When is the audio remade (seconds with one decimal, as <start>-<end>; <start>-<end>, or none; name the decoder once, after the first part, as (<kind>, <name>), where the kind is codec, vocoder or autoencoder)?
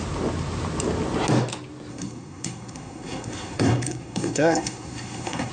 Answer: 1.9-5.5 (codec, SNAC)